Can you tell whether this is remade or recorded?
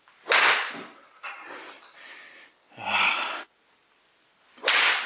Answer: recorded